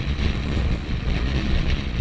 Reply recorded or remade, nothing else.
remade